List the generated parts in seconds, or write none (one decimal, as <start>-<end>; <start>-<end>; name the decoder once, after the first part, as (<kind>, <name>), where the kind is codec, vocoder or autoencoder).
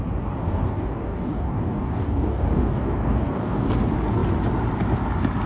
0.4-3.7 (codec, DAC)